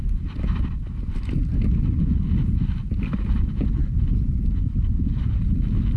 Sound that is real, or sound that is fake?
real